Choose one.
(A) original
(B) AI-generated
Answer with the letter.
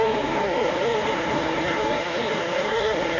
B